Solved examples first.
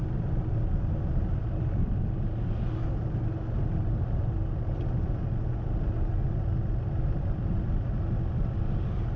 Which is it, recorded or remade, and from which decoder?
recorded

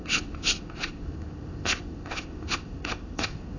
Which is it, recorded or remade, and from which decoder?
remade, codec, ZipCodec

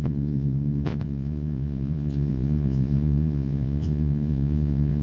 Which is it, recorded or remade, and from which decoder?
remade, vocoder, Vocos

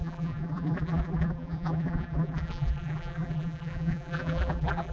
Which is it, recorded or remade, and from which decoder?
remade, vocoder, BigVGAN v2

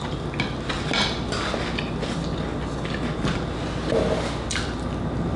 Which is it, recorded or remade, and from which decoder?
recorded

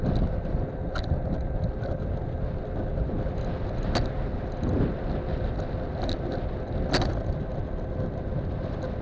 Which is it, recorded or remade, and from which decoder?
recorded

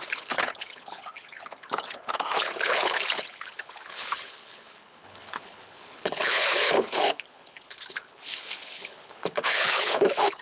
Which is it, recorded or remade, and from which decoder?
remade, codec, HILCodec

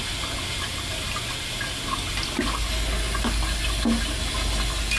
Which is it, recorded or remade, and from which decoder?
recorded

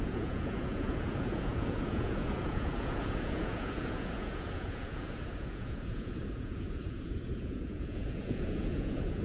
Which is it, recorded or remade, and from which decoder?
remade, vocoder, Vocos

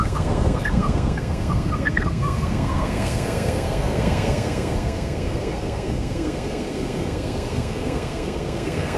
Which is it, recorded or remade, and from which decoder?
remade, codec, SNAC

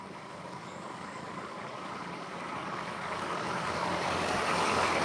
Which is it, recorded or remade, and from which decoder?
remade, codec, DAC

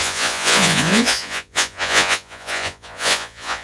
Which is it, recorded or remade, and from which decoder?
remade, vocoder, Vocos